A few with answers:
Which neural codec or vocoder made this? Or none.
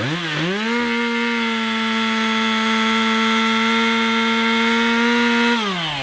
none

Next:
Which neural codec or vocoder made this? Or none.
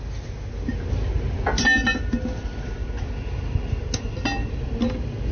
none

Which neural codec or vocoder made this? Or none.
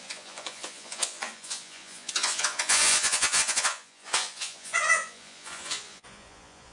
vocoder, Vocos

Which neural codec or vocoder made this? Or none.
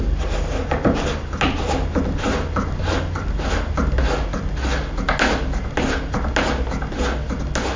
none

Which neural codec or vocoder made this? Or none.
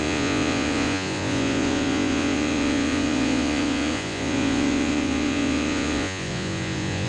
vocoder, Vocos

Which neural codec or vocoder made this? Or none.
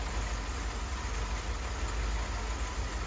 none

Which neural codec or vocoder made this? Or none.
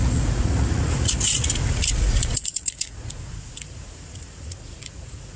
vocoder, Vocos